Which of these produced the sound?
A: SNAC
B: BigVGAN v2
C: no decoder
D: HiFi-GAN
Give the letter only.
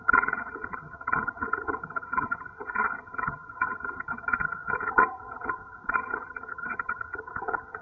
D